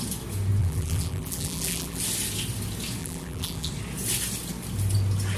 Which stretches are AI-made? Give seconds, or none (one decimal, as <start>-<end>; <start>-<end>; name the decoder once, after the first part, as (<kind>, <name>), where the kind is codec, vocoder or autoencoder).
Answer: 0.6-2.0 (vocoder, BigVGAN v2); 3.0-3.7